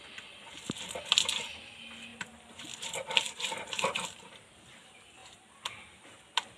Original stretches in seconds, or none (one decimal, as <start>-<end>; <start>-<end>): 0.0-2.1; 4.7-6.6